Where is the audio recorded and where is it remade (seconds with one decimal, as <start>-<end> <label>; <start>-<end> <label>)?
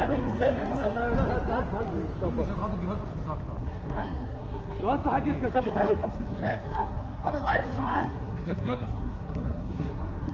0.0-1.0 remade; 1.0-3.6 recorded; 3.6-4.8 remade; 4.8-5.5 recorded; 5.5-10.3 remade